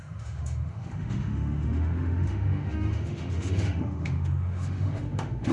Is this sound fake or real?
fake